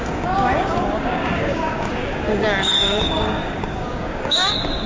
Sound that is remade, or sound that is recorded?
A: remade